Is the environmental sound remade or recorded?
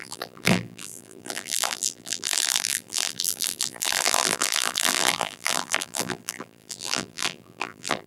remade